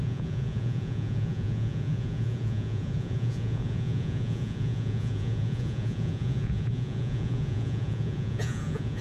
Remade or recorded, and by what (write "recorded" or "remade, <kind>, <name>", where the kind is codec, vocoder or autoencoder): remade, vocoder, Vocos